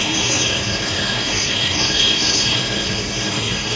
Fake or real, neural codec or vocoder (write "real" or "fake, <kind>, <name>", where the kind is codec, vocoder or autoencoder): fake, codec, SNAC